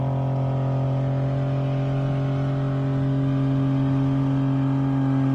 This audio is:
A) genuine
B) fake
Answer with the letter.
A